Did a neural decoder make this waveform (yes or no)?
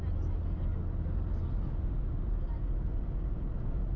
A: no